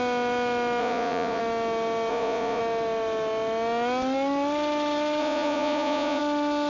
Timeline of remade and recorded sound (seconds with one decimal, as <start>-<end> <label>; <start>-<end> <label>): 0.0-0.8 recorded; 0.8-1.4 remade; 1.4-2.1 recorded; 2.1-2.6 remade; 2.6-5.2 recorded; 5.2-6.2 remade; 6.2-6.7 recorded